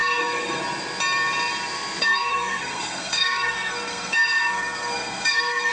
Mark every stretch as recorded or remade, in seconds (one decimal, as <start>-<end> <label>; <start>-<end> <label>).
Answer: 0.0-0.6 remade; 0.6-2.0 recorded; 2.0-5.7 remade